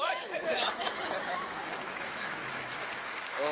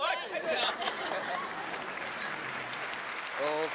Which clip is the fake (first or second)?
first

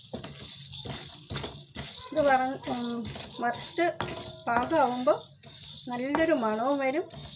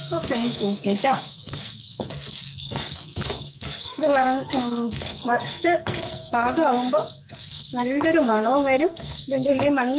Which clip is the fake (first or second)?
second